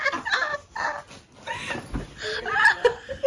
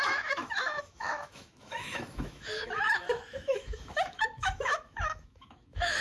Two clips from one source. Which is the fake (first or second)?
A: second